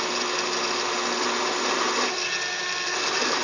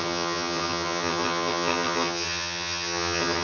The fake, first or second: second